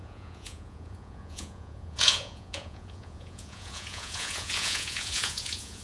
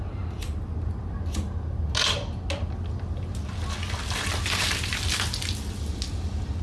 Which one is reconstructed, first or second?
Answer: first